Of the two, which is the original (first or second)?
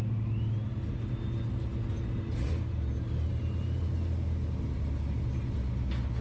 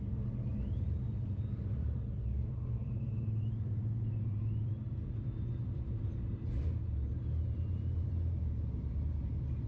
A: first